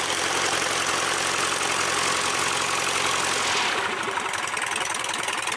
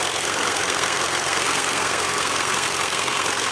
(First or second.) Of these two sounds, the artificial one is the second